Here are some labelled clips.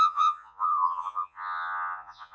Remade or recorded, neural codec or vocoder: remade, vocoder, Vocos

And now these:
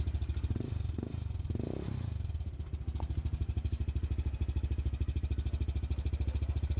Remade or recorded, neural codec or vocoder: recorded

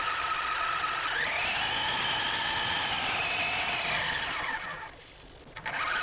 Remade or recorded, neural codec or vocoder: recorded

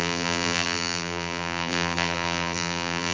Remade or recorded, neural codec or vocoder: remade, vocoder, BigVGAN v2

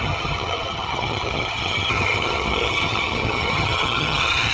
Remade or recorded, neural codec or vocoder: remade, vocoder, HiFi-GAN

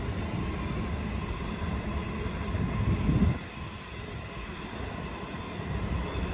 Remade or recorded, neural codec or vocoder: recorded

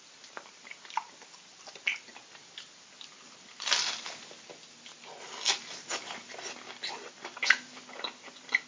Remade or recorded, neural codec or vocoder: recorded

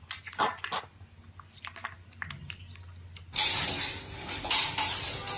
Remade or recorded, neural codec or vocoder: recorded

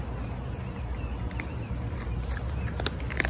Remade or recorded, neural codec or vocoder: recorded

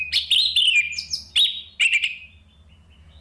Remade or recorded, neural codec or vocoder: recorded